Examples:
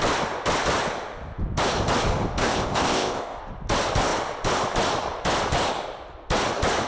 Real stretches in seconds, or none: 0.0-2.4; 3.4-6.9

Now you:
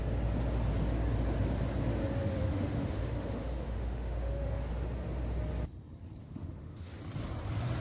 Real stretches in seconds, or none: 0.0-2.5; 4.7-6.2; 7.0-7.8